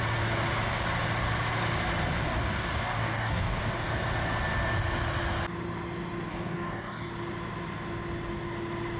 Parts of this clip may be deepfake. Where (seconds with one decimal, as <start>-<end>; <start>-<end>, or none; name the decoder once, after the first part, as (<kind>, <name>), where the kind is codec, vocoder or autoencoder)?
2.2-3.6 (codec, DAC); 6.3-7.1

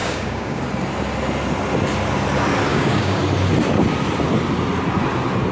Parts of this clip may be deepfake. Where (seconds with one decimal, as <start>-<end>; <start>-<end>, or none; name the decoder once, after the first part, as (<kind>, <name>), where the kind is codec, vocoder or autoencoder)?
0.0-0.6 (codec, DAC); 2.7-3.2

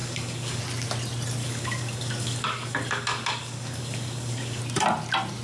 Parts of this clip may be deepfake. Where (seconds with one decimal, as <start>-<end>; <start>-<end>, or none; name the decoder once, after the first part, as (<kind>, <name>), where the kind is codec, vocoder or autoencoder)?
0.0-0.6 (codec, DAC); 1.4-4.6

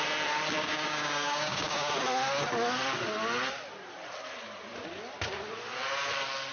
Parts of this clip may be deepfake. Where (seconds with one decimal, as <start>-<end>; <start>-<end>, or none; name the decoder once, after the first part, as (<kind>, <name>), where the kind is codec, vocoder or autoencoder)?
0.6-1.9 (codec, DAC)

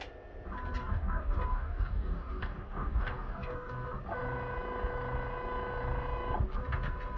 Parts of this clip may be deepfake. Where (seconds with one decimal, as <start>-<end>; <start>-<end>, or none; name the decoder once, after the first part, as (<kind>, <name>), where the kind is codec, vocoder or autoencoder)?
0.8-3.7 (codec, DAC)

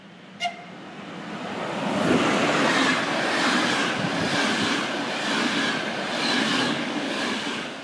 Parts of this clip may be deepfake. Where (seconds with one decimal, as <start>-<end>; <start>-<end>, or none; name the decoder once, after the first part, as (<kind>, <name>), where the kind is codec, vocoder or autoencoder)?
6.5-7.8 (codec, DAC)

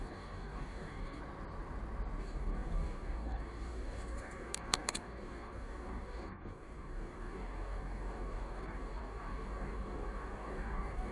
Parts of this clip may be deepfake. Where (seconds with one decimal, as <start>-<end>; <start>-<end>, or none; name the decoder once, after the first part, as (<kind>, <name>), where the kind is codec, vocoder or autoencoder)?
0.0-1.2 (codec, DAC); 2.2-11.1

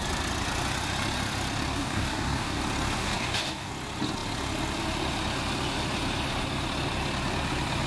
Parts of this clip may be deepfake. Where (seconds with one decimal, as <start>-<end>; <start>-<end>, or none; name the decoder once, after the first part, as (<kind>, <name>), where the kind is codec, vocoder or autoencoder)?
1.7-2.6 (codec, DAC); 3.0-3.7